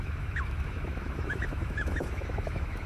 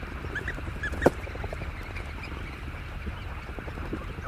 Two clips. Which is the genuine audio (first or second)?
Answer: second